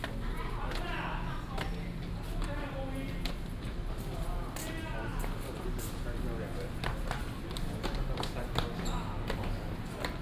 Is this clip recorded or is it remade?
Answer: recorded